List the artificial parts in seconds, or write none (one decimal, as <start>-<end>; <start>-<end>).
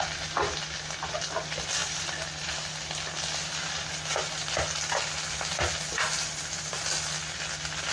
none